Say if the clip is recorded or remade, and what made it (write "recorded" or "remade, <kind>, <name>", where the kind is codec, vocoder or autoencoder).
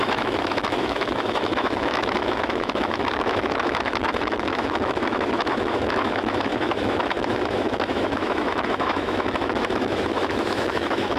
remade, autoencoder, DAC-VAE